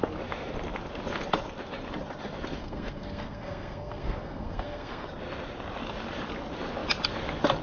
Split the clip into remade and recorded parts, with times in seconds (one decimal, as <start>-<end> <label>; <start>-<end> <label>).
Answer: 0.0-2.6 recorded; 2.6-5.1 remade; 5.1-7.6 recorded